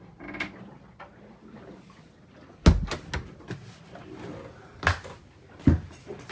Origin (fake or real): real